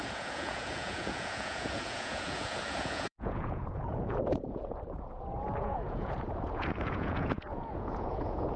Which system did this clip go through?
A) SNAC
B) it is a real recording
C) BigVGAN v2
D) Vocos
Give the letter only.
D